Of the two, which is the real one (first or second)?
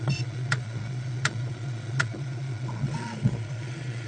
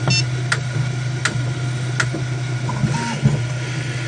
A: second